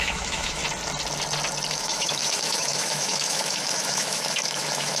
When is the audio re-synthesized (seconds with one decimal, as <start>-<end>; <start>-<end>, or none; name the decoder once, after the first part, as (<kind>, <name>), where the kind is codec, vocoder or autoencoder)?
0.0-0.6 (autoencoder, DAC-VAE); 1.7-5.0